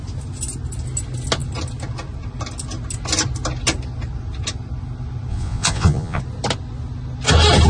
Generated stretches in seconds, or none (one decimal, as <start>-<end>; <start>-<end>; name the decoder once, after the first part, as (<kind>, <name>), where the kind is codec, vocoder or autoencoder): 5.3-6.2 (vocoder, Vocos)